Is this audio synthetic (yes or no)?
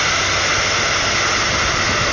no